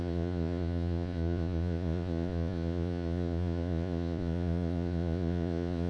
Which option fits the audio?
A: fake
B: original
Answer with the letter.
A